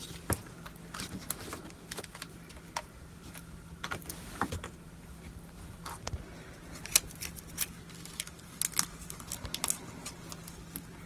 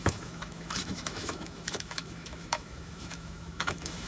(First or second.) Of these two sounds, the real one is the first